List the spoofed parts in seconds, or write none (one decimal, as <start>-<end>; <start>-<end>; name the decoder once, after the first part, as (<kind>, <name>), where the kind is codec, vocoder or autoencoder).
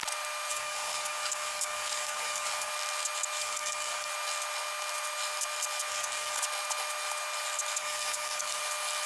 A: 0.5-2.7 (codec, DAC); 3.4-4.1; 5.9-6.4; 7.8-8.6